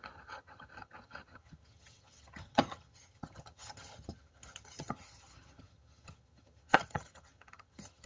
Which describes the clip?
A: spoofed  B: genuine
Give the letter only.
A